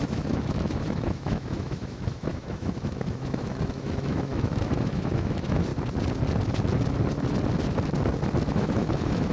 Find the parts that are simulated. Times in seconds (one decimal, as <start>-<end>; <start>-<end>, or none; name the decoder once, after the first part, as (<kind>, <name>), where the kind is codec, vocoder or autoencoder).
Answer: 0.0-5.7 (autoencoder, DAC-VAE); 8.5-9.3